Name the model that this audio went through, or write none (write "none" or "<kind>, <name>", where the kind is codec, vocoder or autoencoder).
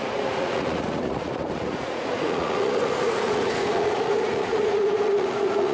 vocoder, Vocos